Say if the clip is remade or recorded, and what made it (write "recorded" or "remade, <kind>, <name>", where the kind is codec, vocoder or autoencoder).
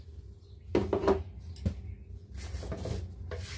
recorded